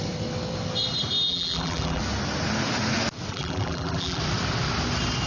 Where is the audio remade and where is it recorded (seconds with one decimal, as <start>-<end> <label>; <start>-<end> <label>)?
0.0-1.3 recorded; 1.3-2.0 remade; 2.0-3.3 recorded; 3.3-4.2 remade; 4.2-5.3 recorded

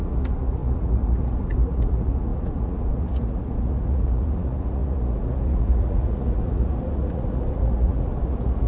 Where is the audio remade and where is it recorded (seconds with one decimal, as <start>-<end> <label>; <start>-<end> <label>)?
0.0-8.7 remade

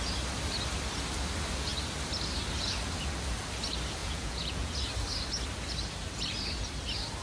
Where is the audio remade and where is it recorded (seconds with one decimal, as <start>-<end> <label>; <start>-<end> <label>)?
0.0-4.0 recorded; 4.0-4.7 remade; 4.7-7.2 recorded

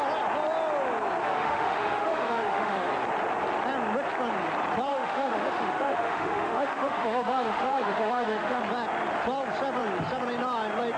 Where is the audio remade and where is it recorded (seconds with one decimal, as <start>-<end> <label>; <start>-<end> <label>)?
0.0-1.2 recorded; 1.2-2.9 remade; 2.9-4.9 recorded; 4.9-8.6 remade; 8.6-11.0 recorded